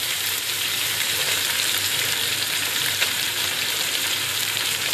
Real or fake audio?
fake